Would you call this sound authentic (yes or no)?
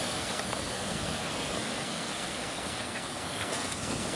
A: no